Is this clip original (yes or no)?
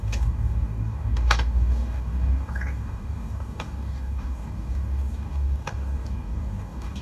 no